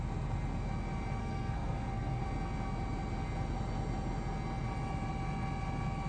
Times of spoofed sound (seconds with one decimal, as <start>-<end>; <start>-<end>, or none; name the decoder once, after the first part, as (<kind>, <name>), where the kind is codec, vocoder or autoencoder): 1.2-2.2 (codec, SNAC)